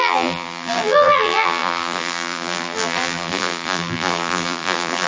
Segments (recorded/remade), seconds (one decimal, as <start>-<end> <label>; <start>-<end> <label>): 0.0-5.1 remade